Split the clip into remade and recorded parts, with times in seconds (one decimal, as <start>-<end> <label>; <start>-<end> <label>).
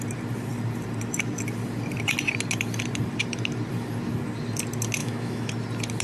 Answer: 0.0-5.0 recorded; 5.0-5.5 remade; 5.5-6.0 recorded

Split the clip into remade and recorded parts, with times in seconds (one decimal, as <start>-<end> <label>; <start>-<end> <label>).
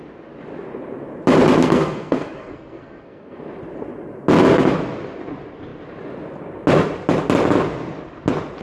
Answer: 0.0-1.6 recorded; 1.6-3.4 remade; 3.4-8.6 recorded